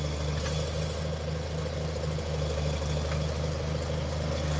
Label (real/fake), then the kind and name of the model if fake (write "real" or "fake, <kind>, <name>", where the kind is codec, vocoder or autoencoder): real